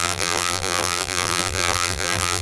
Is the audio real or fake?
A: fake